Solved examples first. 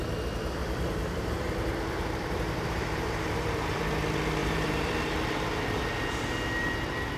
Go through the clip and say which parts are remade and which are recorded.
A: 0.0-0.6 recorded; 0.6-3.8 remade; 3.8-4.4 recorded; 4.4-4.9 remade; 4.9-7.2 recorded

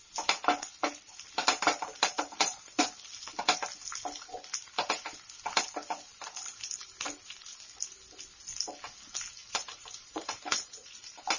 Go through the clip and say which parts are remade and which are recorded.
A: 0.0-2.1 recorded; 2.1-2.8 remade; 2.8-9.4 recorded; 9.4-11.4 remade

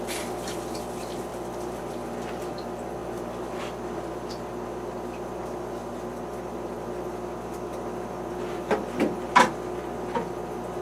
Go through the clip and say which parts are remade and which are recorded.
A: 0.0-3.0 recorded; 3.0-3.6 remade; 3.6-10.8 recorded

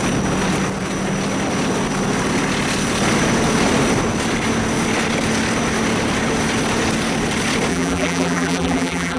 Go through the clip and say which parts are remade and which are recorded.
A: 0.0-7.7 recorded; 7.7-9.2 remade

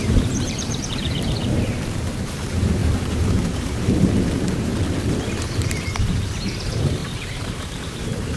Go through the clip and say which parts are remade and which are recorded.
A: 0.0-4.7 remade; 4.7-5.4 recorded; 5.4-8.4 remade

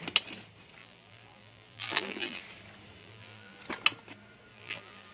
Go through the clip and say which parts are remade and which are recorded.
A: 0.0-0.8 recorded; 0.8-2.4 remade; 2.4-3.0 recorded; 3.0-3.6 remade; 3.6-4.5 recorded; 4.5-5.1 remade